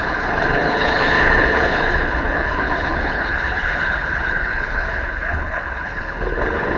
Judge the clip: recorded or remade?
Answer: remade